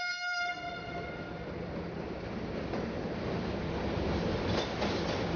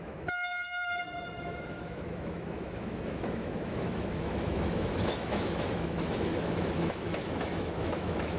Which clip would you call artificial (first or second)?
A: second